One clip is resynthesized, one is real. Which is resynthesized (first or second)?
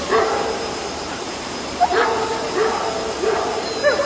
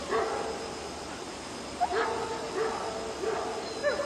first